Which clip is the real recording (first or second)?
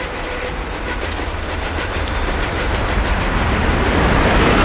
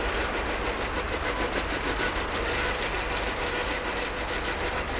second